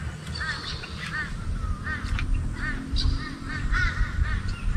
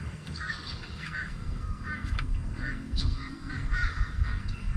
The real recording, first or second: first